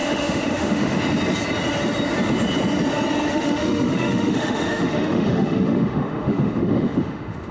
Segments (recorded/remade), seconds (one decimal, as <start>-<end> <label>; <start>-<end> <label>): 0.0-1.0 remade; 1.0-3.3 recorded; 3.3-7.5 remade